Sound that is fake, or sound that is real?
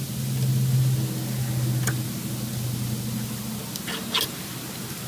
real